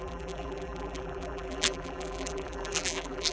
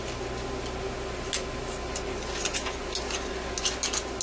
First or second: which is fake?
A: first